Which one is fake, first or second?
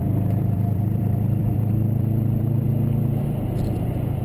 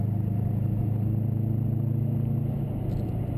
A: first